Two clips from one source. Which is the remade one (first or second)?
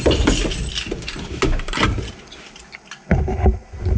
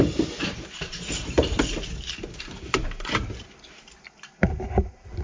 second